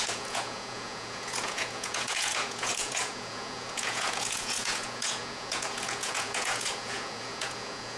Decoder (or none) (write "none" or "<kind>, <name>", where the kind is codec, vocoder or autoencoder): vocoder, Vocos